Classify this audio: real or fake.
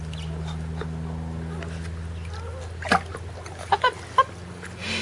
real